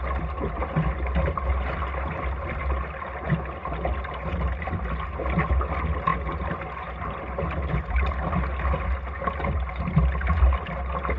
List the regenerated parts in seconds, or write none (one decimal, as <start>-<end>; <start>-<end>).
none